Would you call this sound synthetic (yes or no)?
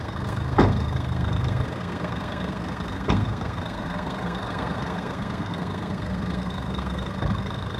yes